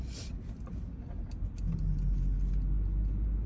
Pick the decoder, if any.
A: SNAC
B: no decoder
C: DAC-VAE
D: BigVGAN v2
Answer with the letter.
B